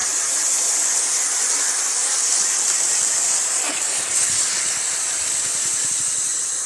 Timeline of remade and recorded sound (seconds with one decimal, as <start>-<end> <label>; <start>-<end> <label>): 0.0-0.8 remade; 0.8-2.0 recorded; 2.0-6.0 remade; 6.0-6.7 recorded